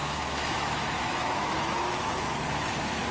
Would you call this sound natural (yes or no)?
no